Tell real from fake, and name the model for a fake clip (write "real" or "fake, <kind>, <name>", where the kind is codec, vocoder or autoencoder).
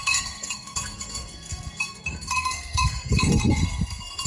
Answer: fake, codec, SNAC